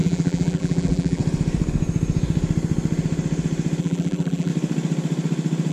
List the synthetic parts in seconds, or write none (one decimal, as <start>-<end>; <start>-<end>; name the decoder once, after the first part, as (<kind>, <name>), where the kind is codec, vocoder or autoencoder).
0.0-1.2 (vocoder, BigVGAN v2); 3.8-4.5

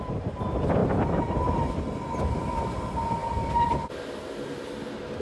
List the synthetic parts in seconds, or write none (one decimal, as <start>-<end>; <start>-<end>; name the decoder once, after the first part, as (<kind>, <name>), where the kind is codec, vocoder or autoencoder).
none

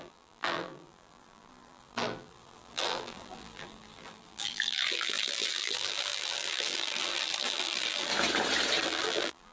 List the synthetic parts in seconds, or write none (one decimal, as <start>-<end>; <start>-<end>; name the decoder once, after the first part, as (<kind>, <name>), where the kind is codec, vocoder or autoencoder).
0.0-8.1 (vocoder, BigVGAN v2); 8.8-9.5

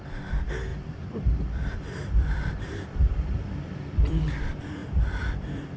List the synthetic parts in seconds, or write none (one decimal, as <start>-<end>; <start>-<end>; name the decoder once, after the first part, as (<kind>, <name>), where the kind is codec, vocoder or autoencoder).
0.7-4.2 (vocoder, BigVGAN v2); 4.8-5.8

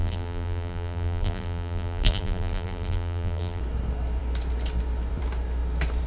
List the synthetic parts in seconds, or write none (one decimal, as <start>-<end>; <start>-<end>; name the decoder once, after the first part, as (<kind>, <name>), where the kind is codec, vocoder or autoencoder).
0.0-3.6 (vocoder, BigVGAN v2)

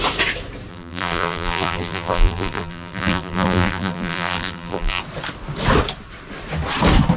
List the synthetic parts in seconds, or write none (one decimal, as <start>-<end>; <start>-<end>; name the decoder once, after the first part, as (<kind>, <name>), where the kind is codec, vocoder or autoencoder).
0.7-5.0 (vocoder, BigVGAN v2)